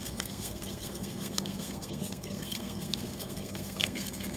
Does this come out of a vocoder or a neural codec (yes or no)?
yes